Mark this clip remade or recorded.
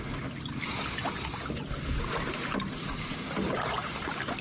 recorded